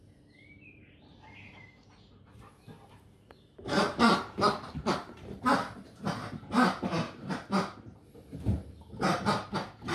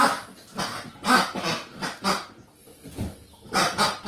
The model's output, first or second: first